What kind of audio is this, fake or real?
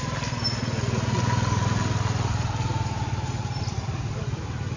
real